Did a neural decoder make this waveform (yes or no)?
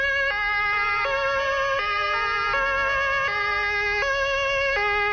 no